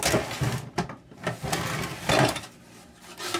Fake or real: real